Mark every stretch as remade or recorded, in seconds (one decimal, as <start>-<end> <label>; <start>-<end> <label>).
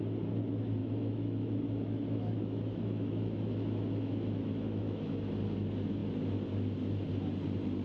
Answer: 0.0-0.8 recorded; 0.8-5.2 remade; 5.2-7.8 recorded